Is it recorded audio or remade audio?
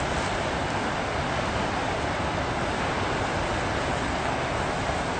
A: recorded